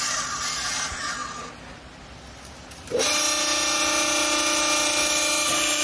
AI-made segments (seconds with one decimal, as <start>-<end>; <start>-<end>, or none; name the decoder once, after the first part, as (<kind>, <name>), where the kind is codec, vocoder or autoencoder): none